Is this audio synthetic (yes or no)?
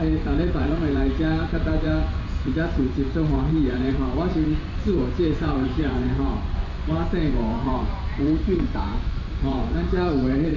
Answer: yes